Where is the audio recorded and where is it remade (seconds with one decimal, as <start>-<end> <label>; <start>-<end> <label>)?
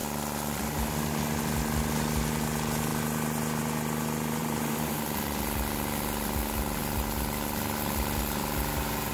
0.0-4.4 recorded; 4.4-4.9 remade; 4.9-9.1 recorded